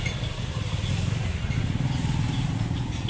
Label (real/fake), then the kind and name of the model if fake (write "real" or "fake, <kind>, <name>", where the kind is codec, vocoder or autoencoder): fake, vocoder, BigVGAN v2